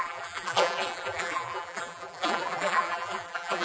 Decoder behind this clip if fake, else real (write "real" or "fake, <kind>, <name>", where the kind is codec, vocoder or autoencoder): fake, vocoder, BigVGAN v2